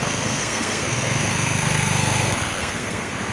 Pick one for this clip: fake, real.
fake